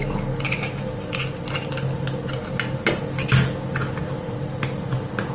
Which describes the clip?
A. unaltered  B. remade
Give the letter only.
A